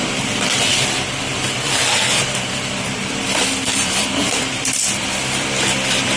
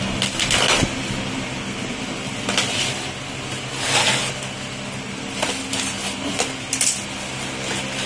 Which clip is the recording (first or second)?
second